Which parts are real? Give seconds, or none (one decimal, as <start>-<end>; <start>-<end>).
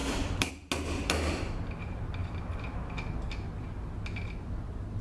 0.5-5.0